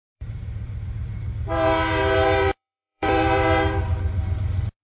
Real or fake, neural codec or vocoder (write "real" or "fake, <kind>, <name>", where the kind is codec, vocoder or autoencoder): fake, vocoder, BigVGAN v2